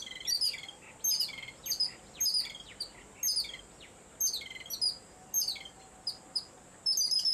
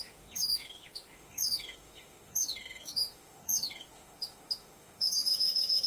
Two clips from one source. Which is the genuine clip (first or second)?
first